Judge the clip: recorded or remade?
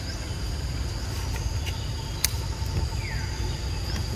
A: recorded